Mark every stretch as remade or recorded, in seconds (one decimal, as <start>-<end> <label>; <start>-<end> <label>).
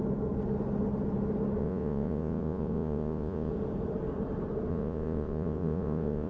0.0-1.6 recorded; 1.6-3.5 remade; 3.5-4.7 recorded; 4.7-6.3 remade